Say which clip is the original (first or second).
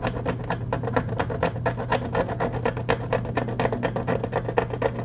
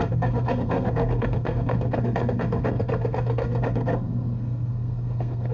first